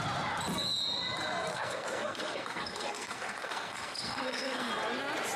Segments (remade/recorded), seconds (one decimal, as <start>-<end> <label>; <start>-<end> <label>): 0.0-1.5 recorded; 1.5-4.7 remade; 4.7-5.4 recorded